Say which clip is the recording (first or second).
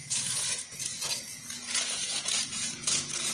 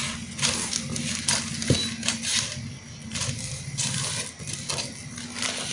second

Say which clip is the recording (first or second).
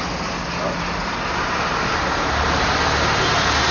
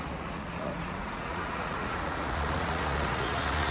first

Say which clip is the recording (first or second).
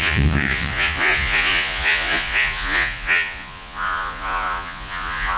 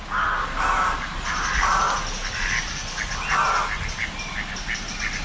second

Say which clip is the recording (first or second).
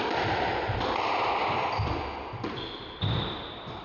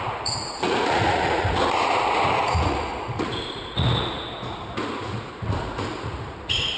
first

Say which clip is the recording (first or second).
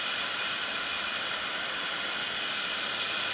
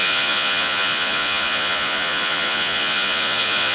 first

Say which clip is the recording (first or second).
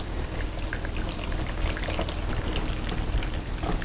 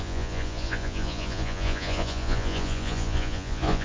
first